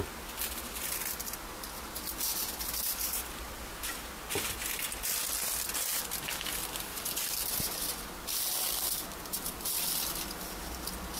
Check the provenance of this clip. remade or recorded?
recorded